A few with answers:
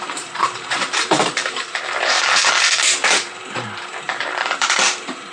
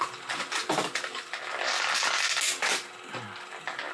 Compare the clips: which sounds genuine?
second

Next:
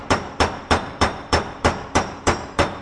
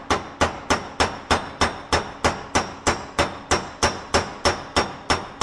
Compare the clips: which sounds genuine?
second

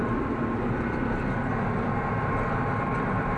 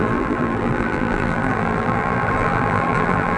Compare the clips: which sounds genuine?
first